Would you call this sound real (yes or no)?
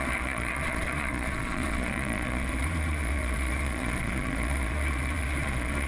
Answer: no